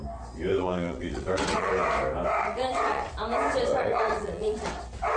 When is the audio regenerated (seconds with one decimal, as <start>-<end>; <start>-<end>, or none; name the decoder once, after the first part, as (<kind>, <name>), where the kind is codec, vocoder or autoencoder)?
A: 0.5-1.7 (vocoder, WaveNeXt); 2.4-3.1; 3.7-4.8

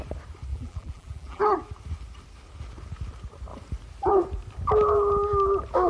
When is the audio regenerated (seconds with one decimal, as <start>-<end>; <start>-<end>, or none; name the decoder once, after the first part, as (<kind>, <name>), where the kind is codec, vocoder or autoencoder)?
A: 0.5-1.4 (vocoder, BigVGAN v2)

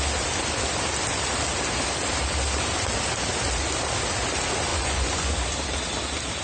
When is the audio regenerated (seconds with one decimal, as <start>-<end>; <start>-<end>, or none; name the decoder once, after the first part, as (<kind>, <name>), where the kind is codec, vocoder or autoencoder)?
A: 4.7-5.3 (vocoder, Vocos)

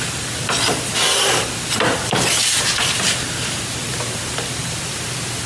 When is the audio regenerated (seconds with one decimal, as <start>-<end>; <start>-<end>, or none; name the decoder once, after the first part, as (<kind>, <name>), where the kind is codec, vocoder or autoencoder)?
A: none